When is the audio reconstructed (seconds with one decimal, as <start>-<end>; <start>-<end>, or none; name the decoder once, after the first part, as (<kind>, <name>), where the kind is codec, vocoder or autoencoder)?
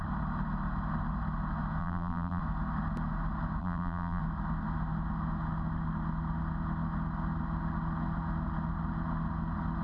1.8-2.4 (vocoder, BigVGAN v2); 3.6-4.2